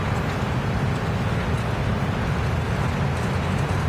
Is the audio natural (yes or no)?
yes